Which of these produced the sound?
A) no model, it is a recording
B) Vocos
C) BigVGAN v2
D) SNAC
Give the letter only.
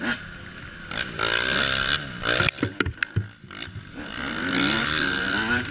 C